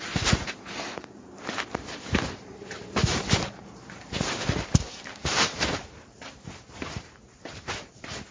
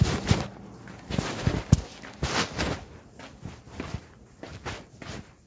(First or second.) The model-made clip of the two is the first